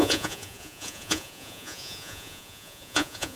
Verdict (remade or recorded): remade